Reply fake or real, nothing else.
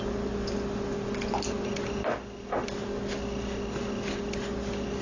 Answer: real